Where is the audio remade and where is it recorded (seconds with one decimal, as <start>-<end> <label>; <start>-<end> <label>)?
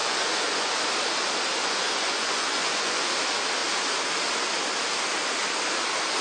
0.0-0.7 remade; 0.7-1.6 recorded; 1.6-3.1 remade; 3.1-6.2 recorded